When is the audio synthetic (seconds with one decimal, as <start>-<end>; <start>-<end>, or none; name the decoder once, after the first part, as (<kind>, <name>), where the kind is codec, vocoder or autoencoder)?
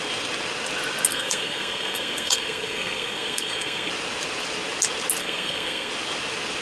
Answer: 1.1-3.9 (codec, SNAC); 5.2-5.9